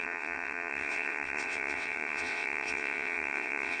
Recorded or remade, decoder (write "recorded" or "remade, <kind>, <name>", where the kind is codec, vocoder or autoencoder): remade, vocoder, WaveNeXt